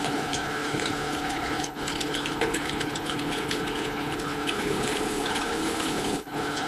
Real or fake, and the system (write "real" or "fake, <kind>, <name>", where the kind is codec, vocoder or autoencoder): fake, codec, HILCodec